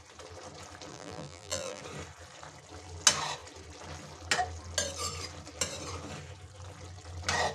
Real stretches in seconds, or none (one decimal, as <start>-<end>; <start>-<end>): 0.0-0.9; 1.8-7.5